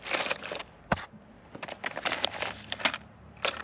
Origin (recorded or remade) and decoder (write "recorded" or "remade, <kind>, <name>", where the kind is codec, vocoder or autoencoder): recorded